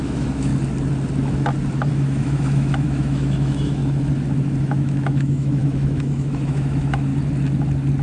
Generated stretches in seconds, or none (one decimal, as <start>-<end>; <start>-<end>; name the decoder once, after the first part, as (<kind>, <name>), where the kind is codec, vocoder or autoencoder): 0.0-0.5 (autoencoder, DAC-VAE); 1.9-3.8; 4.6-7.1